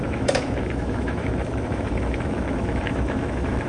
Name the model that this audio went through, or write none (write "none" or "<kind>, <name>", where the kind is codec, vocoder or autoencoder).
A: autoencoder, DAC-VAE